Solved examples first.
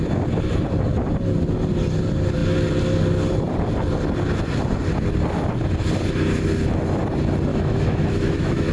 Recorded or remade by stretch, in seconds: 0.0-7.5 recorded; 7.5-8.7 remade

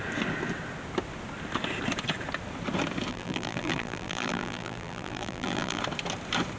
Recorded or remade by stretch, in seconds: 0.0-3.1 recorded; 3.1-5.8 remade; 5.8-6.6 recorded

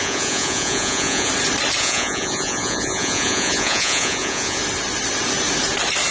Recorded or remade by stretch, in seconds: 0.0-1.3 remade; 1.3-1.8 recorded; 1.8-4.6 remade; 4.6-6.1 recorded

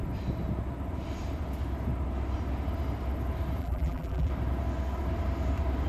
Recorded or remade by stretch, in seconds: 0.0-3.6 recorded; 3.6-4.3 remade; 4.3-5.9 recorded

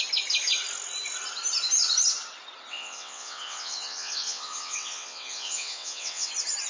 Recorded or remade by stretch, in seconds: 0.0-2.7 recorded; 2.7-6.3 remade; 6.3-6.7 recorded

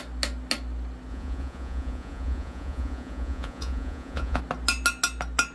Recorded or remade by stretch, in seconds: 0.0-1.1 recorded; 1.1-4.4 remade; 4.4-5.5 recorded

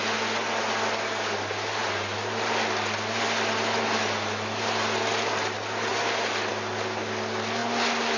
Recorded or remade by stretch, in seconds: 0.0-8.2 recorded